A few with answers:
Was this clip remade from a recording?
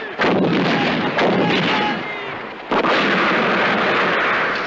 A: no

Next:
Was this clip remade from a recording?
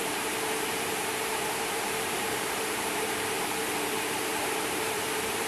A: yes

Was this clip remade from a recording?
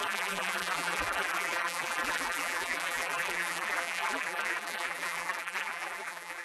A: yes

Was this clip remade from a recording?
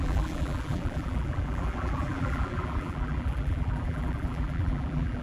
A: yes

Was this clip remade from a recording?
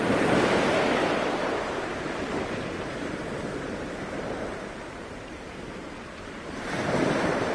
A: yes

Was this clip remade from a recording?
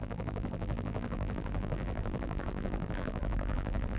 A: yes